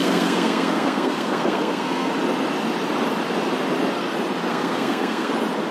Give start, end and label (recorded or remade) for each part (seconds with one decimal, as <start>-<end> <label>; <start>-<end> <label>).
0.0-2.1 remade; 2.1-4.5 recorded; 4.5-5.3 remade; 5.3-5.7 recorded